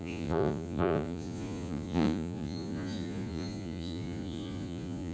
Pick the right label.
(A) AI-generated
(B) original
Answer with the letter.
A